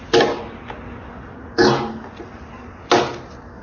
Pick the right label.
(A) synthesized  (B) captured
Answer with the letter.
B